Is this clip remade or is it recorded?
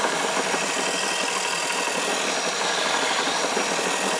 recorded